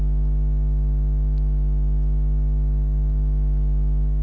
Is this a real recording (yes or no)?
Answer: yes